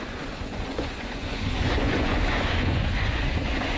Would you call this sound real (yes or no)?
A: no